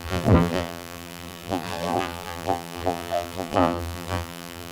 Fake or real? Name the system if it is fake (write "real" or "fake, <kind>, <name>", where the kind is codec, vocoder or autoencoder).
fake, vocoder, BigVGAN v2